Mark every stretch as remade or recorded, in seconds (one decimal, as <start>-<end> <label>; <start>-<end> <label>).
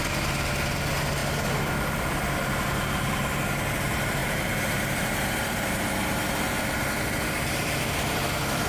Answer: 0.0-1.2 recorded; 1.2-1.7 remade; 1.7-4.2 recorded; 4.2-5.7 remade; 5.7-8.7 recorded